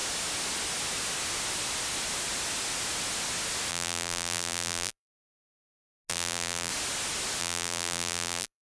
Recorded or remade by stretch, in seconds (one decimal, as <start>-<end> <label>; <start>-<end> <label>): 0.0-3.7 recorded; 3.7-5.3 remade; 5.3-6.1 recorded; 6.1-6.7 remade; 6.7-7.4 recorded; 7.4-8.7 remade